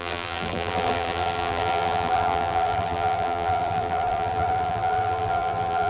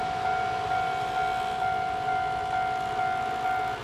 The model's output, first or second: first